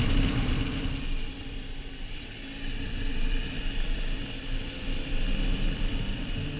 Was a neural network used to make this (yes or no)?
no